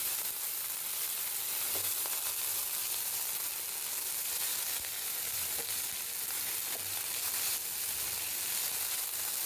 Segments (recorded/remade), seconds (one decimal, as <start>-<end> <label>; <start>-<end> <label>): 0.0-9.5 recorded